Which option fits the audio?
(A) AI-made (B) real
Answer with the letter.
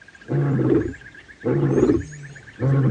B